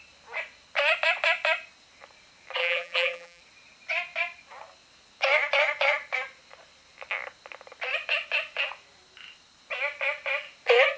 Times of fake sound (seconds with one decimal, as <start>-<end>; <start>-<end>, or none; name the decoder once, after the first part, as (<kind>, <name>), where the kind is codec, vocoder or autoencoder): 2.6-3.4 (vocoder, BigVGAN v2)